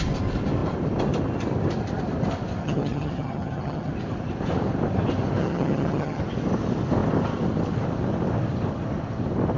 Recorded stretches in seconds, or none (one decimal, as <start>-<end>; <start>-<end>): 0.0-2.6; 3.9-5.4; 6.2-9.6